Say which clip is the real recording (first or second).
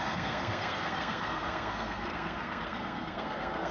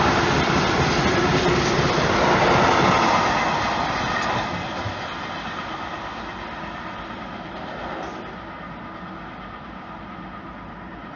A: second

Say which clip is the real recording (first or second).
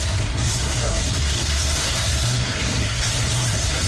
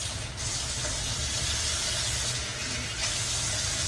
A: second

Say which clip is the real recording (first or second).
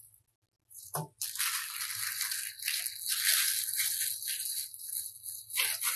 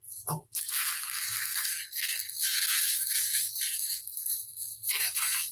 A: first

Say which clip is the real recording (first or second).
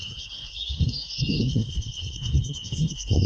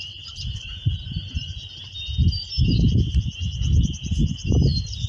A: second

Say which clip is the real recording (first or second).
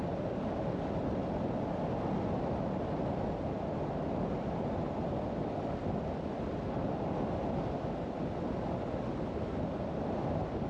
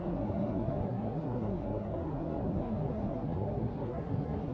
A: first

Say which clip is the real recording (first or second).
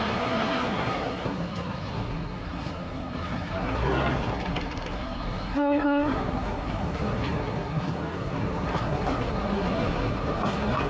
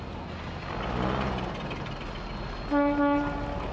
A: second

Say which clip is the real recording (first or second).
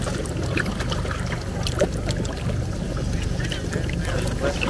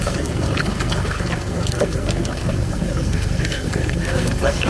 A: first